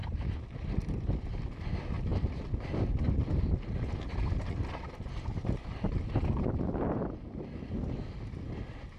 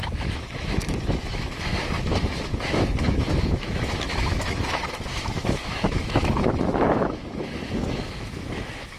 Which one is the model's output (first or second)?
second